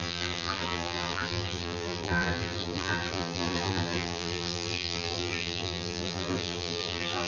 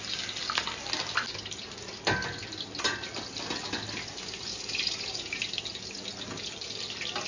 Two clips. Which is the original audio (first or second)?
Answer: second